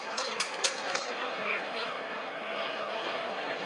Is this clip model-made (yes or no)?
yes